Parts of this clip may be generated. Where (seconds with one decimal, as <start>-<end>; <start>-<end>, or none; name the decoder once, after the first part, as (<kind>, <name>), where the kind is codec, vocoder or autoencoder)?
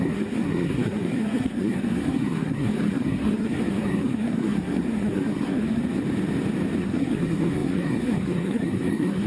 0.0-5.8 (codec, SNAC); 6.8-9.3